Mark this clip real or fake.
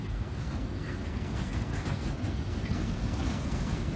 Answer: fake